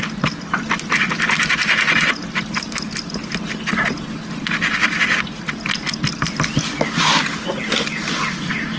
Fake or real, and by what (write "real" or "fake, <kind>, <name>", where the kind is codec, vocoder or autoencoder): real